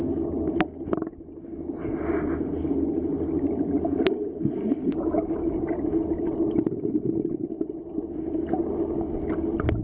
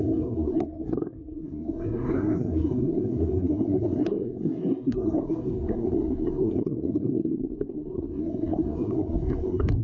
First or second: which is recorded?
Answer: first